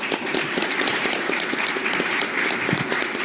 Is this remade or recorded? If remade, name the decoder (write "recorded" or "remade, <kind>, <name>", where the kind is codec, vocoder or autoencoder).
recorded